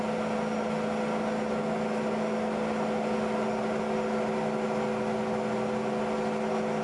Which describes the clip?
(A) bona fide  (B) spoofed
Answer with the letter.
A